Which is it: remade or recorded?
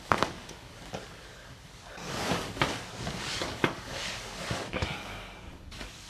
remade